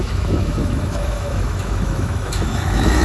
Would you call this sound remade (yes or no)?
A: yes